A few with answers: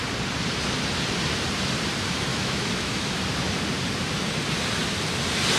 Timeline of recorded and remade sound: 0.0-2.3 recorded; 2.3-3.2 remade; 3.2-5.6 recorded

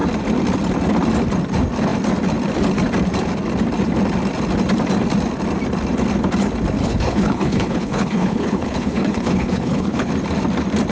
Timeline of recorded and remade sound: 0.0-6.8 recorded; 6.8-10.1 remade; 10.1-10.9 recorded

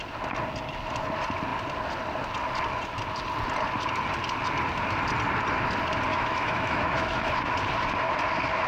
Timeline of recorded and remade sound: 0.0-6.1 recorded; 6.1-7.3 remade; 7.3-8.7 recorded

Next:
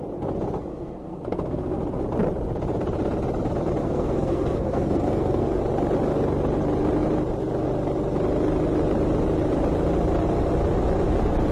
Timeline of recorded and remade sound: 0.0-0.7 recorded; 0.7-1.8 remade; 1.8-3.8 recorded; 3.8-5.6 remade; 5.6-11.5 recorded

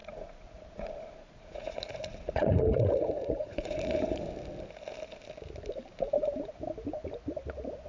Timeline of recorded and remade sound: 0.0-4.3 remade; 4.3-7.9 recorded